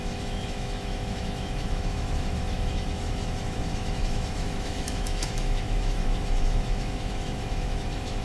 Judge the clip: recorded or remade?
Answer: remade